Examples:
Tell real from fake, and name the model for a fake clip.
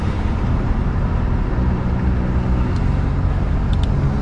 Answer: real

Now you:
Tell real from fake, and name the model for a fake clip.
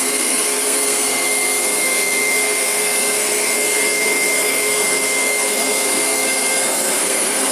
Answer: fake, codec, SNAC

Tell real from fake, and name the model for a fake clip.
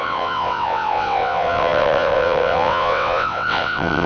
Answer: fake, vocoder, WaveNeXt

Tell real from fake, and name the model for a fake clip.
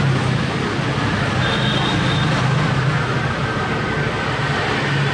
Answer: real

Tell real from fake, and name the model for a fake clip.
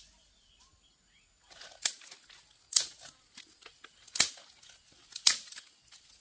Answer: real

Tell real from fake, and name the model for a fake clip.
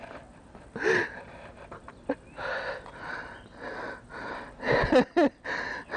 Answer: real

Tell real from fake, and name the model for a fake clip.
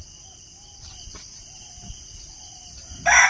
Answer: real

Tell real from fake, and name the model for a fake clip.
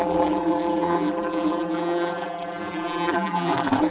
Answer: fake, vocoder, BigVGAN v2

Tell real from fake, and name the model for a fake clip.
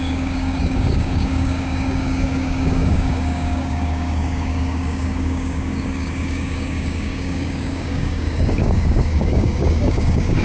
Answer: fake, codec, DAC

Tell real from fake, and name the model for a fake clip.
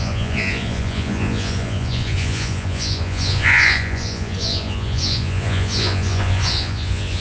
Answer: fake, vocoder, Vocos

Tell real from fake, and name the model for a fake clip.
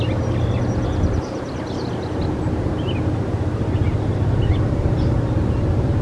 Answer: real